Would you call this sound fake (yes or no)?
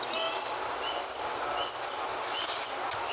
no